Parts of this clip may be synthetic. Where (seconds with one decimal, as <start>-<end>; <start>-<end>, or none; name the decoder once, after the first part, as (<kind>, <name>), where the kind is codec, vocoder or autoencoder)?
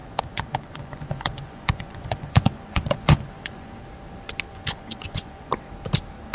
0.0-3.8 (vocoder, Vocos); 4.5-5.5